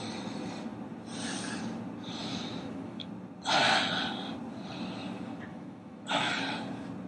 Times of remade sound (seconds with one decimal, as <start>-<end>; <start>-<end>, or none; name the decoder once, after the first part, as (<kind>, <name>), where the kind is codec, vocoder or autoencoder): 2.2-3.1 (autoencoder, DAC-VAE); 5.5-6.3